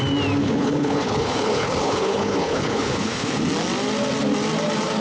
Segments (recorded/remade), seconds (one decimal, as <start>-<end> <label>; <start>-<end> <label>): 0.0-0.4 recorded; 0.4-3.4 remade; 3.4-5.0 recorded